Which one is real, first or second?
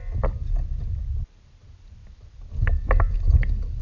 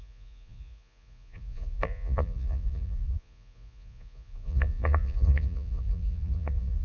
first